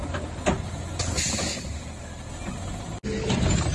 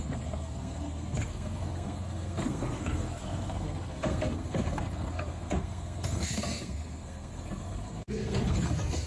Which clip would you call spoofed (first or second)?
second